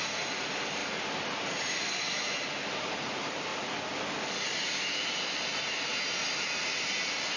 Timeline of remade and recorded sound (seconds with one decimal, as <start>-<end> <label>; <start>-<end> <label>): 0.0-0.8 remade; 0.8-2.7 recorded; 2.7-3.5 remade; 3.5-5.0 recorded; 5.0-7.4 remade